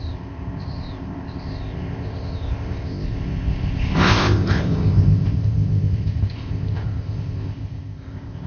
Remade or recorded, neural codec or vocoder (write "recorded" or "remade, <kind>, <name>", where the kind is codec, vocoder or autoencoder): remade, codec, ZipCodec